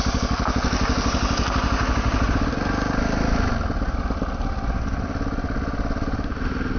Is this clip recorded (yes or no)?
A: yes